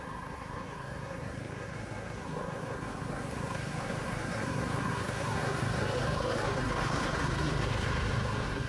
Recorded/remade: remade